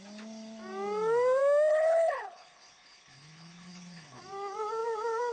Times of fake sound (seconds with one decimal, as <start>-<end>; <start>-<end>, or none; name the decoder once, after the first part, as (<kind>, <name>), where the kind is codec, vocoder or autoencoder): 1.7-4.2 (codec, HILCodec)